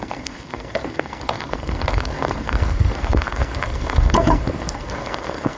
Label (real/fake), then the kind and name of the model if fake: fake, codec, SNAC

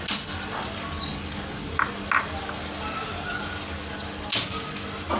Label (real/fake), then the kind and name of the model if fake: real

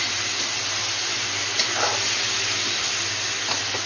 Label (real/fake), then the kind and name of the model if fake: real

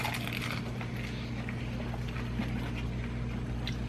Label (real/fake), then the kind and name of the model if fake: real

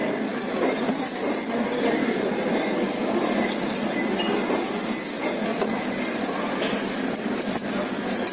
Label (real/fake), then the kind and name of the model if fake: real